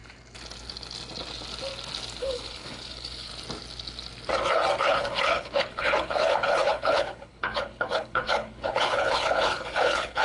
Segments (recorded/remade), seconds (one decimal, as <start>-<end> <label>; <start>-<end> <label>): 0.0-2.2 recorded; 2.2-3.3 remade; 3.3-4.8 recorded; 4.8-10.2 remade